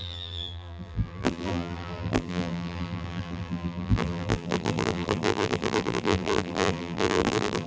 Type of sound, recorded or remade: remade